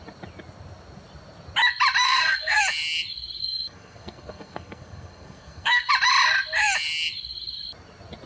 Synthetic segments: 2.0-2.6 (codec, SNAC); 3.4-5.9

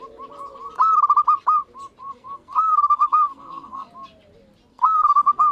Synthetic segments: 2.0-3.9 (codec, SNAC); 4.7-5.5

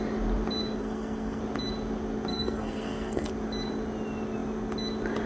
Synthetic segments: 0.8-1.4 (codec, SNAC); 2.3-3.3

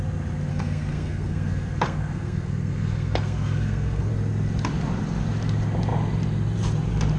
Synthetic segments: 0.5-4.1 (codec, SNAC)

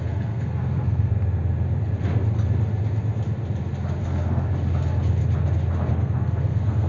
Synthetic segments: 0.0-1.1 (codec, SNAC); 4.0-4.5; 5.9-6.9

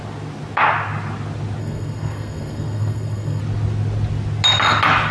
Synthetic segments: 1.6-3.4 (codec, SNAC)